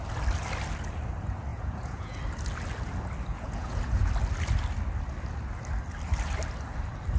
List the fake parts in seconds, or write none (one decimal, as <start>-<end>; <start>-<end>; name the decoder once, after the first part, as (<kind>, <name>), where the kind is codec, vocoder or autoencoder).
1.5-2.2 (vocoder, Vocos); 3.3-4.1